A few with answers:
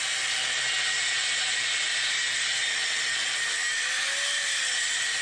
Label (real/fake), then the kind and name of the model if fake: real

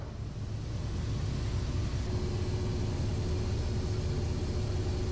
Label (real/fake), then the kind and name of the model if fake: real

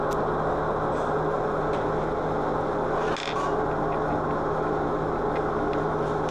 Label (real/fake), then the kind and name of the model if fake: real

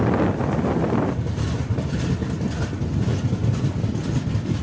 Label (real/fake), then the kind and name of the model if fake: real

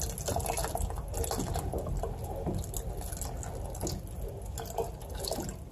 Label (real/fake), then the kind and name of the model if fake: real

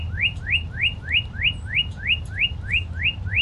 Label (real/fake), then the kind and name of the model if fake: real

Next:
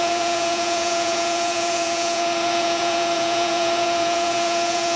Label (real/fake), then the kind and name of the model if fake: fake, vocoder, Vocos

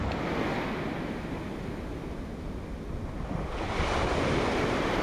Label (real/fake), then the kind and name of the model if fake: real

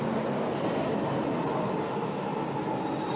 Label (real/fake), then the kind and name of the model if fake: real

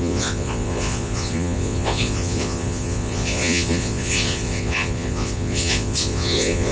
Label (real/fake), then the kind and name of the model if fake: fake, vocoder, Vocos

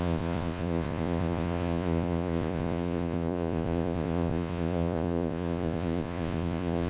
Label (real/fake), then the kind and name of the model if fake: fake, vocoder, Vocos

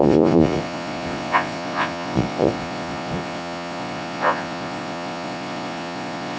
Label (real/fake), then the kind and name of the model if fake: fake, vocoder, Vocos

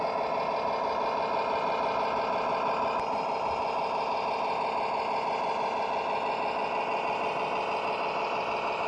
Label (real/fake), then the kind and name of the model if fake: real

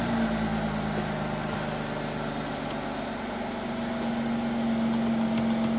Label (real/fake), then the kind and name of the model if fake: real